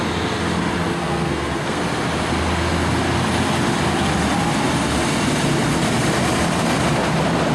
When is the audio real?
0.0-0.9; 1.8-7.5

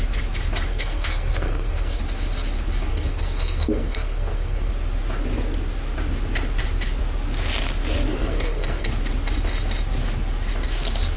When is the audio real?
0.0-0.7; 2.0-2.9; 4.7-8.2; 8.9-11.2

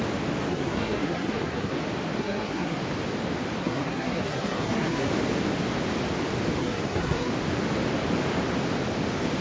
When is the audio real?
0.0-0.5; 1.7-2.2; 2.8-3.6; 5.1-6.6; 7.3-9.4

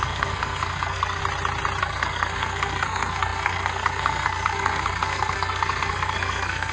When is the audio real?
1.2-1.8